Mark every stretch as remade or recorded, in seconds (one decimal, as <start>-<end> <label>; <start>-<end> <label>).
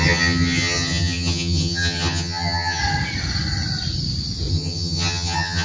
0.0-2.8 remade; 2.8-4.5 recorded; 4.5-5.6 remade